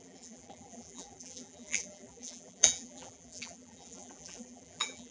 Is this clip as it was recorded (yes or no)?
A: no